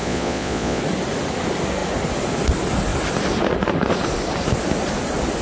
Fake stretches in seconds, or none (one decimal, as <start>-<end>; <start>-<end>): 0.0-0.8